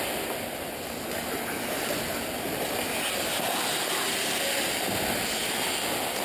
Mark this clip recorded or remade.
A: recorded